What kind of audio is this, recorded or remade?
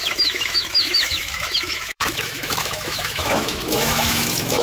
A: remade